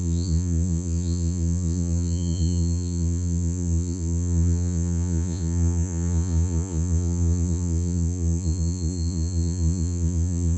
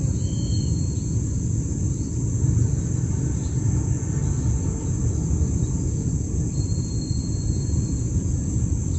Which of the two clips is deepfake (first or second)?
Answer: first